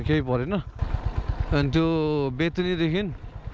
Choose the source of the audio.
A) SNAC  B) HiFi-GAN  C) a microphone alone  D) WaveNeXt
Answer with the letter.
C